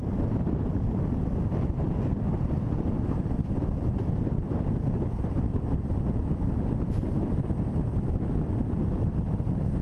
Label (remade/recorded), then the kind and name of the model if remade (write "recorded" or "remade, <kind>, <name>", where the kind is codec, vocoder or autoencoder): recorded